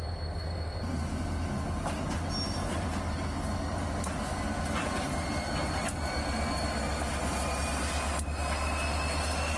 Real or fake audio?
real